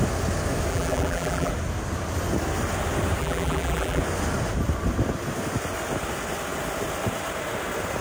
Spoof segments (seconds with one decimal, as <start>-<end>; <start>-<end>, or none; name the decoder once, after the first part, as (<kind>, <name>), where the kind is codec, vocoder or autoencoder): 0.7-1.5 (vocoder, BigVGAN v2); 3.2-4.0